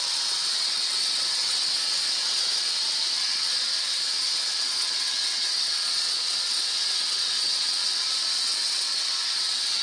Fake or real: fake